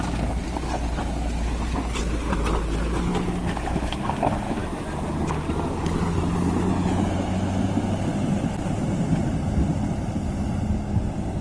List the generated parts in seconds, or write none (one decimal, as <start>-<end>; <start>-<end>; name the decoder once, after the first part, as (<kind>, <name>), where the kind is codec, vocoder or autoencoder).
none